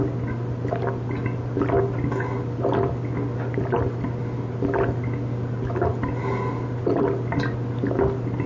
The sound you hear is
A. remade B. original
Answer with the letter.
B